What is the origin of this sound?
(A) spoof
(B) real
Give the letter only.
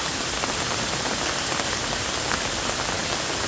B